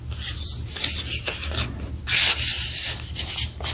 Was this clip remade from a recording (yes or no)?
no